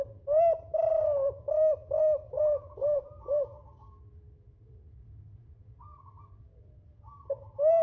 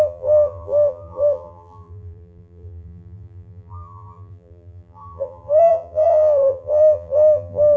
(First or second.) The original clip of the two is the first